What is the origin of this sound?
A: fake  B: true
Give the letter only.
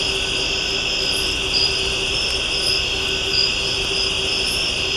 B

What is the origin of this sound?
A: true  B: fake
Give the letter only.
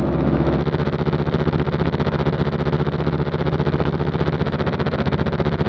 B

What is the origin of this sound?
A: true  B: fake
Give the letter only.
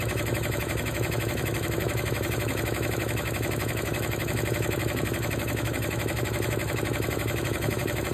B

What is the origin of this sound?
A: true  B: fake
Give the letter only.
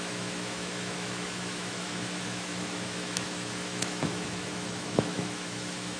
B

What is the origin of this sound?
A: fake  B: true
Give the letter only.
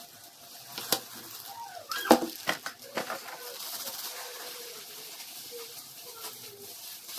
B